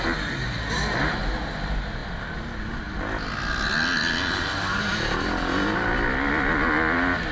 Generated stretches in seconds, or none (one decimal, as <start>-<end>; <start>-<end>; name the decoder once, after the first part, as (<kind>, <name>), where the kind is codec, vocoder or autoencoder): none